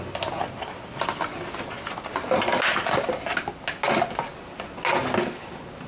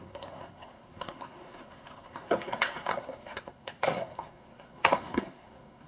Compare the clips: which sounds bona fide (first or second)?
first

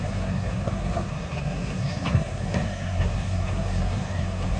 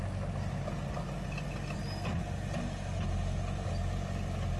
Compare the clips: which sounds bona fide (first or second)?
second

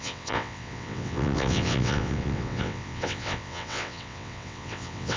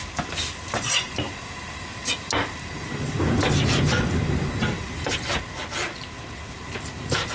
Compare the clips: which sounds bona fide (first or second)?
second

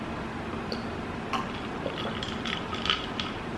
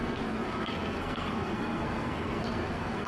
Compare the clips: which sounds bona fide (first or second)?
first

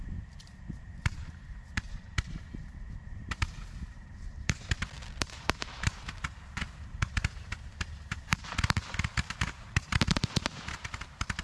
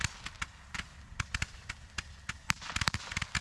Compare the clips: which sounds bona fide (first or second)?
second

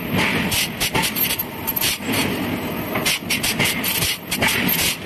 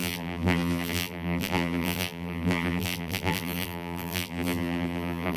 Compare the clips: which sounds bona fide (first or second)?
first